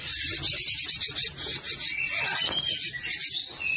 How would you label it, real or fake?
real